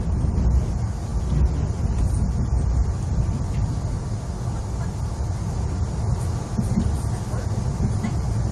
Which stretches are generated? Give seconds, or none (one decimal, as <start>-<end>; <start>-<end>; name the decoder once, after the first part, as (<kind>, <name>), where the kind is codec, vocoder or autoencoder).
none